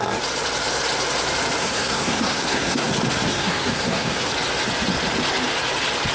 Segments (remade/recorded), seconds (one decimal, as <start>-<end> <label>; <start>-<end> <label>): 0.0-1.6 recorded; 1.6-2.9 remade; 2.9-3.3 recorded; 3.3-4.3 remade; 4.3-6.1 recorded